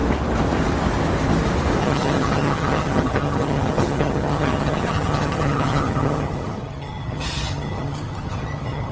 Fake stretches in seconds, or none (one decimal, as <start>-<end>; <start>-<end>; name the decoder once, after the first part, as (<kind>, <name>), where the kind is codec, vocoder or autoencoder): 1.8-8.9 (vocoder, HiFi-GAN)